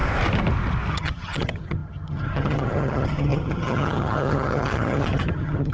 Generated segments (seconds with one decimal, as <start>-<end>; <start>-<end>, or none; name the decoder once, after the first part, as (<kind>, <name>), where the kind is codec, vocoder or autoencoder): 0.9-5.7 (vocoder, HiFi-GAN)